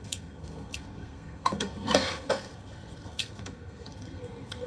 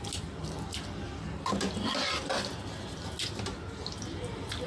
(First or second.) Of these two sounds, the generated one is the first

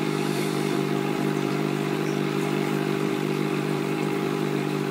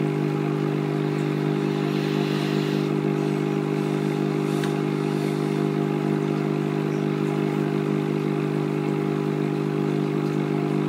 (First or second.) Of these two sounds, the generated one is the first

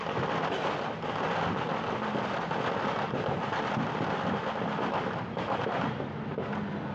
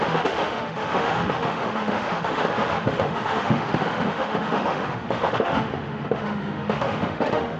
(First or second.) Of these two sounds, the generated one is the second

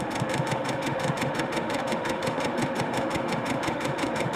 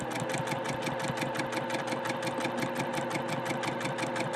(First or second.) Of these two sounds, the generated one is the first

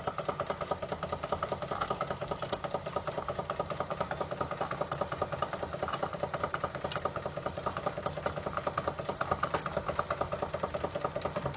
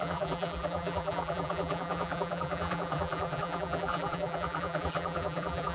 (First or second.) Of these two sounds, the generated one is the second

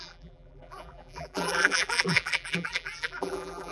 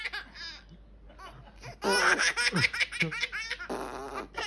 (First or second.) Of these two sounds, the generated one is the first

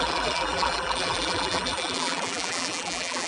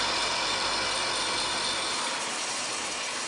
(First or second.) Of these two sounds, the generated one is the first